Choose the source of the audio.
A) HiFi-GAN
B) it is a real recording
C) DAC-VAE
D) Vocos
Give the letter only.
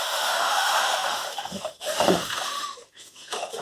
C